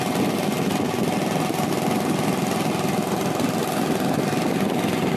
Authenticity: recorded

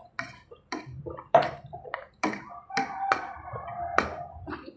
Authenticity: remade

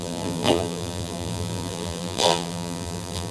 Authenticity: remade